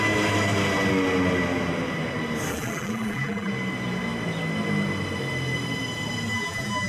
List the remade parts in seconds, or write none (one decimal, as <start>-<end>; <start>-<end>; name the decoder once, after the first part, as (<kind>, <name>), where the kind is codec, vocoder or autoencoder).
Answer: 2.5-3.5 (vocoder, BigVGAN v2); 6.3-6.9